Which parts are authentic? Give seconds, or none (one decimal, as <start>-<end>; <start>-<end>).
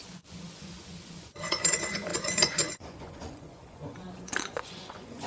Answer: none